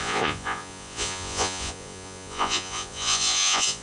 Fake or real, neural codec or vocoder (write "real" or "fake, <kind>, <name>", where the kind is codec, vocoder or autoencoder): fake, vocoder, Vocos